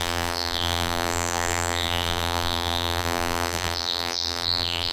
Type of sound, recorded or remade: remade